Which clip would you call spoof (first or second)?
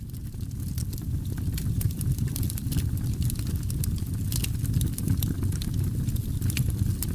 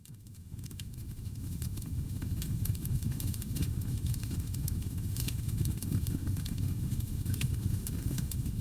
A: second